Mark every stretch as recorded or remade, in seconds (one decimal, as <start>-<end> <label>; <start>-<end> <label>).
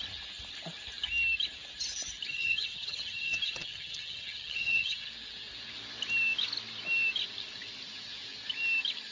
0.0-2.3 recorded; 2.3-5.1 remade; 5.1-9.1 recorded